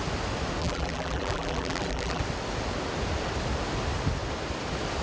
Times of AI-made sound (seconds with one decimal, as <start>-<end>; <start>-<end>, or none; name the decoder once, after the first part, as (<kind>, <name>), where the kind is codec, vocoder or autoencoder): 0.6-2.2 (vocoder, BigVGAN v2)